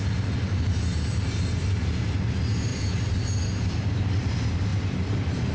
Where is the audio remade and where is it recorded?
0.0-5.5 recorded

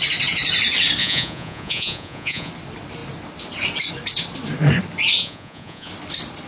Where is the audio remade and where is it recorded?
0.0-1.0 recorded; 1.0-2.5 remade; 2.5-5.2 recorded; 5.2-5.9 remade; 5.9-6.5 recorded

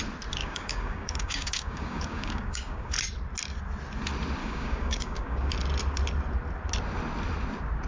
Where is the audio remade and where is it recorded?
0.0-0.4 recorded; 0.4-2.9 remade; 2.9-4.4 recorded; 4.4-5.5 remade; 5.5-7.9 recorded

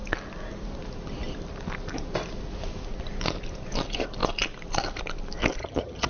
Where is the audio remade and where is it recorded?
0.0-5.6 recorded; 5.6-6.1 remade

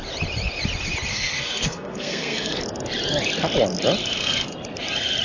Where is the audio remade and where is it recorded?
0.0-1.1 recorded; 1.1-2.6 remade; 2.6-4.0 recorded; 4.0-4.5 remade; 4.5-5.2 recorded

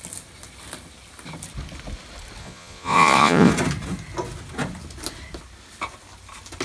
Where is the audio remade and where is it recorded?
0.0-2.4 recorded; 2.4-3.5 remade; 3.5-6.6 recorded

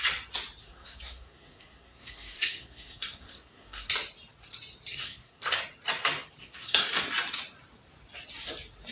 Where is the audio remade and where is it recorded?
0.0-0.6 recorded; 0.6-3.9 remade; 3.9-4.9 recorded; 4.9-5.6 remade; 5.6-6.4 recorded; 6.4-7.0 remade; 7.0-8.9 recorded

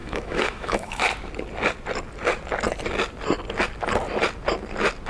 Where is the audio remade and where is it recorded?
0.0-1.0 remade; 1.0-5.1 recorded